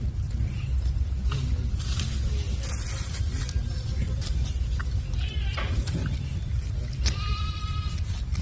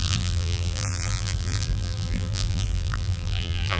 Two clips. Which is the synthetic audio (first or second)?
second